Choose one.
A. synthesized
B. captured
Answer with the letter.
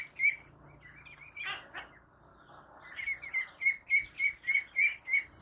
B